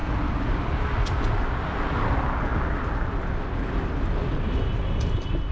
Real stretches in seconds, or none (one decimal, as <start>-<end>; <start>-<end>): 0.0-5.5